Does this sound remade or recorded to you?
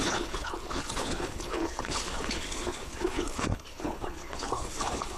remade